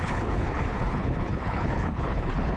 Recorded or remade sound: remade